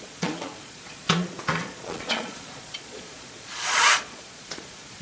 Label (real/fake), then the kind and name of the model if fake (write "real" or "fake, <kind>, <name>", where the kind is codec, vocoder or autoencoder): fake, vocoder, Vocos